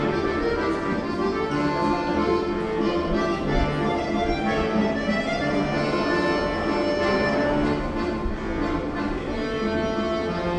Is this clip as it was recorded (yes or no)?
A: yes